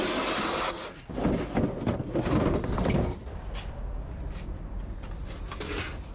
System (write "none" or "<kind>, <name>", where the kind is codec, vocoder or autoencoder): none